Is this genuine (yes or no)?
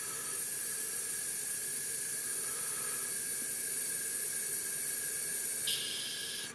yes